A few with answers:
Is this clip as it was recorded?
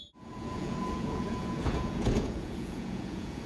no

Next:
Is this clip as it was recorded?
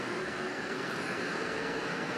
no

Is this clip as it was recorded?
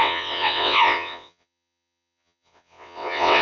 no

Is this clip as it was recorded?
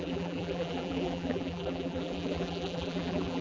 no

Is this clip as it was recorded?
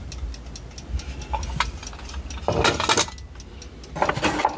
yes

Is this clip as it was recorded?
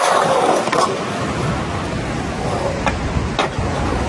yes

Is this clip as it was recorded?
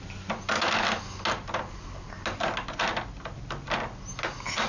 yes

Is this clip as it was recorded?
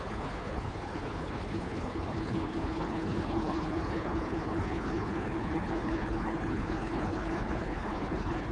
no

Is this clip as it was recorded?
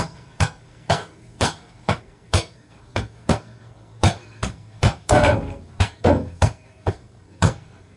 no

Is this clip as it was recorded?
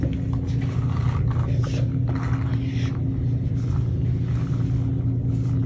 yes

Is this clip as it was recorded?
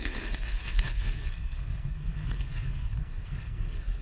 no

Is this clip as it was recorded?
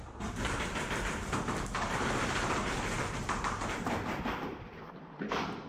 no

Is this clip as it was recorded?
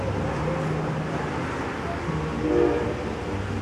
yes